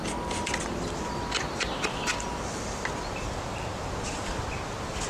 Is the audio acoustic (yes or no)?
yes